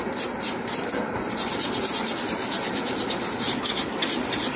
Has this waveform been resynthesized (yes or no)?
yes